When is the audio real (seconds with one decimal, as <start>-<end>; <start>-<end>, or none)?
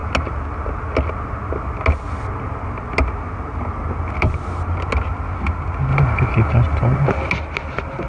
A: 0.0-8.1